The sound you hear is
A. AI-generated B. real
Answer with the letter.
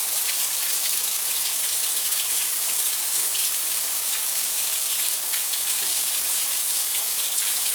A